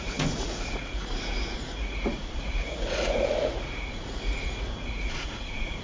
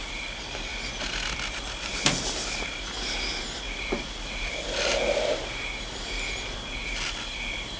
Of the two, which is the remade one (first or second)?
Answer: first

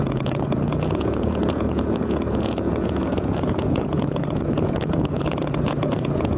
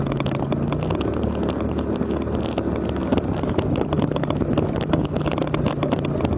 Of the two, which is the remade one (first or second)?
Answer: first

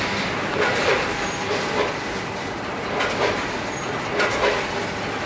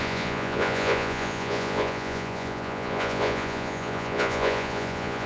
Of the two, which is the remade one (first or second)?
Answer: second